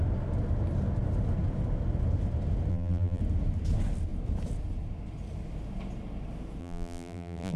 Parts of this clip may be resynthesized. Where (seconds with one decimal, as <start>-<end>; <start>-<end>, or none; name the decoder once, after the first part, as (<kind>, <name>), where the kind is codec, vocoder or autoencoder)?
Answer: 2.7-3.2 (vocoder, BigVGAN v2); 6.6-7.6